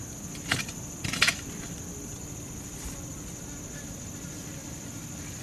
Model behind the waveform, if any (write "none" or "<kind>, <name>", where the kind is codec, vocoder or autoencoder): vocoder, BigVGAN v2